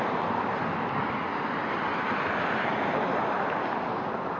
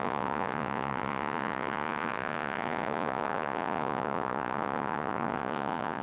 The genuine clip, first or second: first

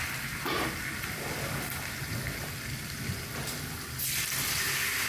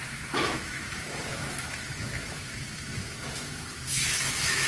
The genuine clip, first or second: first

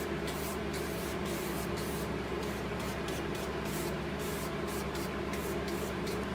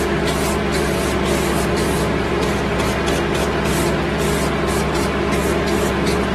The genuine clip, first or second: second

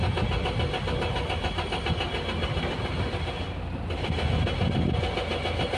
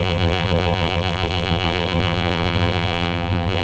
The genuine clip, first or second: first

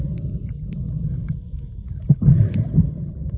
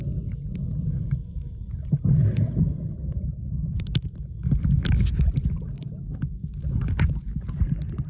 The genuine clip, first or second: second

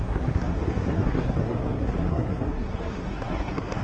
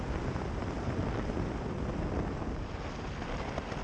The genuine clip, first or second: second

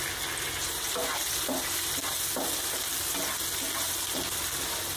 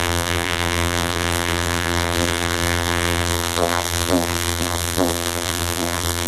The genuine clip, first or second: first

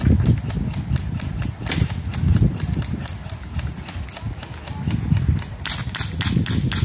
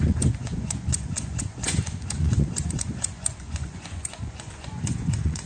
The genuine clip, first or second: first